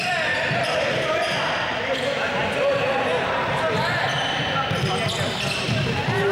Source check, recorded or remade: recorded